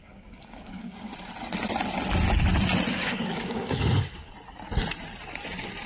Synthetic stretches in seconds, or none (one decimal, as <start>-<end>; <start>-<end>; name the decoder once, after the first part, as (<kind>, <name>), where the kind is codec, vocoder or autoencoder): 0.0-1.1 (codec, DAC); 2.9-4.3